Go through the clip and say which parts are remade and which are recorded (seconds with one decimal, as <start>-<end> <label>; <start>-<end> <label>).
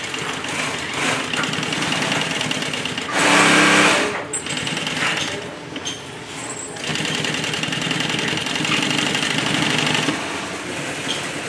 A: 0.0-11.5 recorded